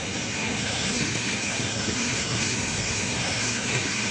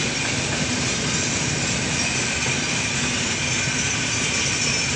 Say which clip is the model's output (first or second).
first